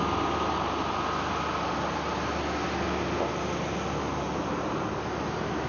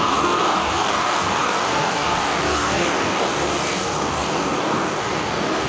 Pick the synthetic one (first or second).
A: second